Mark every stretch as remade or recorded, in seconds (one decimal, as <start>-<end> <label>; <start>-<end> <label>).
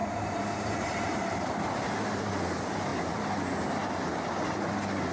0.0-2.3 remade; 2.3-5.1 recorded